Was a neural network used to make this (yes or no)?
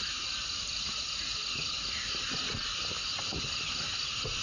no